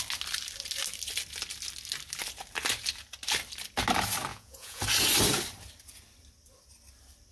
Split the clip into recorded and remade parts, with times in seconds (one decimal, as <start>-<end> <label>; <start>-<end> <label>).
0.0-4.3 recorded; 4.3-4.8 remade; 4.8-7.3 recorded